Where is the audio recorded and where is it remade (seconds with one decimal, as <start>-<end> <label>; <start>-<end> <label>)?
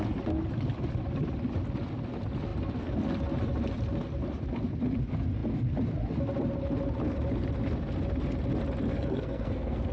0.0-8.9 recorded; 8.9-9.9 remade